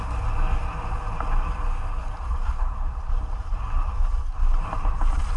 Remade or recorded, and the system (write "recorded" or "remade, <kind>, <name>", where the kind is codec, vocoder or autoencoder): recorded